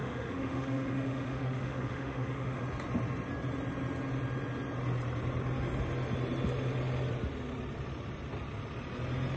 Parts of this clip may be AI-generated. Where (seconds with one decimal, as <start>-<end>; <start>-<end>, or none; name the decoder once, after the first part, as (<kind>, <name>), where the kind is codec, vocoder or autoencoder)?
0.0-2.6 (autoencoder, DAC-VAE)

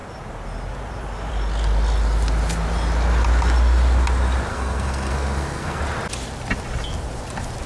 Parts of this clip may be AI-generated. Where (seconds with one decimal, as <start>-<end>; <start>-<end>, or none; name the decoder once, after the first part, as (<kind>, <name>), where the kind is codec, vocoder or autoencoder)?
4.5-5.8 (codec, SNAC)